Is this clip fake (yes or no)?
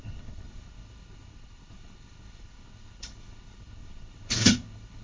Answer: yes